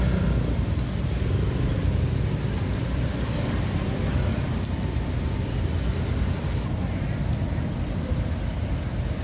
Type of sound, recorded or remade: recorded